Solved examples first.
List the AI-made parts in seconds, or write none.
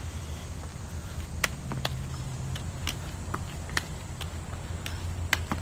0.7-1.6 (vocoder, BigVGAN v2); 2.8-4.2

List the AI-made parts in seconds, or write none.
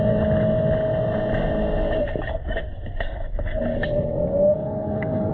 2.3-3.6 (codec, SNAC); 4.5-5.3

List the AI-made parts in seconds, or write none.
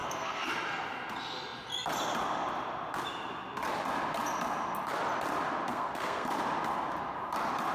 0.0-0.5 (codec, SNAC); 5.7-6.3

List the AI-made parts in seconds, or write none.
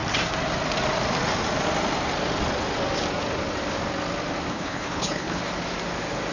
4.5-5.4 (codec, HILCodec)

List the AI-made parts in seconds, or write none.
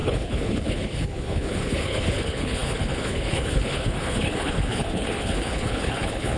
0.0-6.4 (codec, HILCodec)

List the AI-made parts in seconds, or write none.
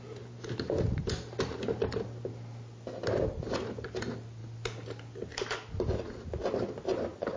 none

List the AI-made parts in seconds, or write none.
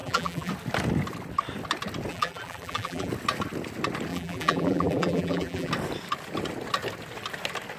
0.0-0.5 (vocoder, BigVGAN v2); 2.1-3.1; 4.1-5.7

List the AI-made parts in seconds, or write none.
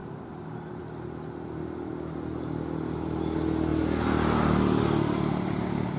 0.0-0.8 (vocoder, BigVGAN v2)